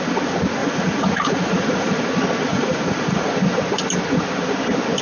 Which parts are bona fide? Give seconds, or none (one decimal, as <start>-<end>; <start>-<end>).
0.0-0.6; 2.0-2.5; 3.3-5.0